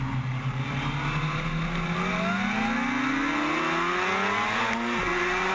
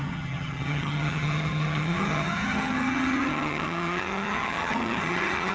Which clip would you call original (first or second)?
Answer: first